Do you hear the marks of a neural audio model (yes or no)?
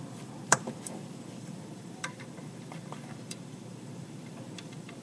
yes